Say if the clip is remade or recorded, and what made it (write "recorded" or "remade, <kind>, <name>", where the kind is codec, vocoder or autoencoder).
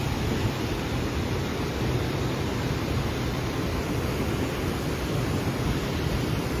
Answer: recorded